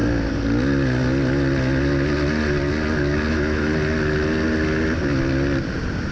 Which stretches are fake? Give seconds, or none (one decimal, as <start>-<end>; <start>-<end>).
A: 3.3-3.7